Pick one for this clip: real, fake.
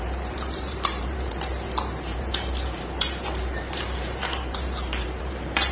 fake